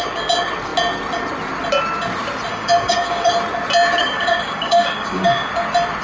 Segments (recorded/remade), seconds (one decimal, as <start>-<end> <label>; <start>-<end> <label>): 0.0-2.5 recorded; 2.5-3.3 remade; 3.3-4.0 recorded; 4.0-5.5 remade; 5.5-6.0 recorded